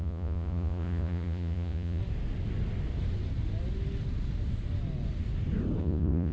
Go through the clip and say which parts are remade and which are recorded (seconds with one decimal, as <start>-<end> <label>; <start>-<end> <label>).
0.0-2.0 remade; 2.0-5.8 recorded; 5.8-6.3 remade